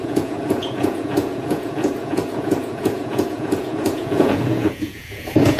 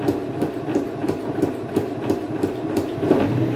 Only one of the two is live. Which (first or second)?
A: second